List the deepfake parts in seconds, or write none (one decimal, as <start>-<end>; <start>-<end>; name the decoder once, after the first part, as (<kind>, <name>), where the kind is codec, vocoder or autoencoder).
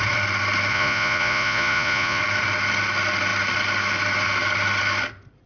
0.7-2.2 (vocoder, Vocos)